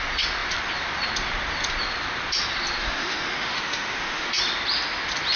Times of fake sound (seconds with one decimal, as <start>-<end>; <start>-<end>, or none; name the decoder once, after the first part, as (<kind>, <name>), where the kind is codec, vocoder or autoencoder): 2.8-4.3 (autoencoder, DAC-VAE)